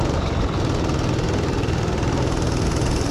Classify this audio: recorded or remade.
recorded